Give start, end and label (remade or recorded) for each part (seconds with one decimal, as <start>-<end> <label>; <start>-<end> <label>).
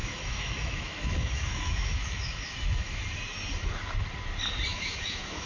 0.0-3.0 remade; 3.0-4.7 recorded; 4.7-5.5 remade